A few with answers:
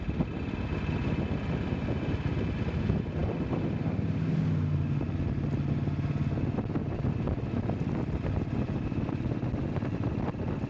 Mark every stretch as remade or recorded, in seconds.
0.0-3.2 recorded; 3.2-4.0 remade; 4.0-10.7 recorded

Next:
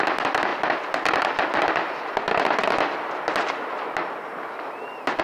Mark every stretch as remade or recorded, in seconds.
0.0-4.3 recorded; 4.3-5.2 remade

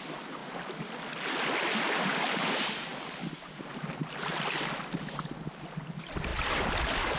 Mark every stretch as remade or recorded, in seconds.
0.0-0.4 recorded; 0.4-2.5 remade; 2.5-2.9 recorded; 2.9-3.7 remade; 3.7-6.3 recorded; 6.3-7.2 remade

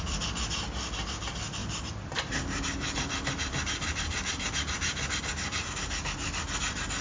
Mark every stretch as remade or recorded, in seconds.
0.0-1.6 recorded; 1.6-5.2 remade; 5.2-7.0 recorded

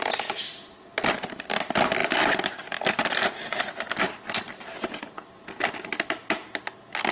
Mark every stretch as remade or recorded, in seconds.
0.0-2.0 recorded; 2.0-4.4 remade; 4.4-7.1 recorded

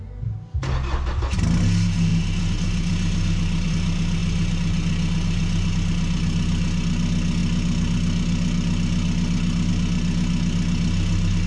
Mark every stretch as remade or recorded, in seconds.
0.0-11.5 recorded

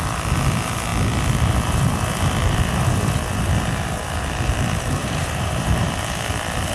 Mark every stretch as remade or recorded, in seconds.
0.0-5.0 recorded; 5.0-6.3 remade; 6.3-6.7 recorded